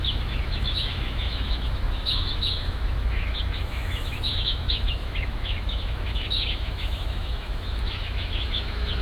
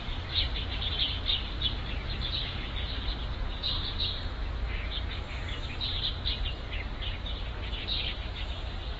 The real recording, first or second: second